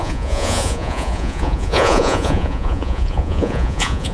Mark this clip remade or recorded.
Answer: remade